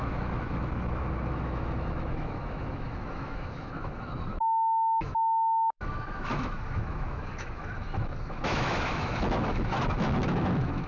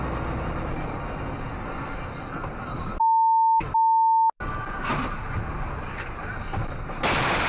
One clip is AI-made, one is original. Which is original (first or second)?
second